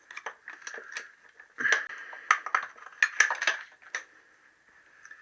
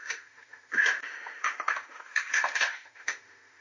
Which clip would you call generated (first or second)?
second